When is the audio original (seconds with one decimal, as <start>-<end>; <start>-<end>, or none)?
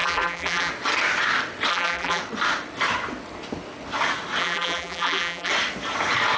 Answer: 0.7-1.7; 2.2-4.4; 5.5-6.4